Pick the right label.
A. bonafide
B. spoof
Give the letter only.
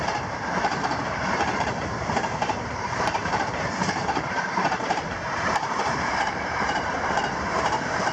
B